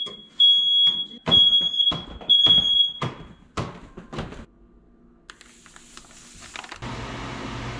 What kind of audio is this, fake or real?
real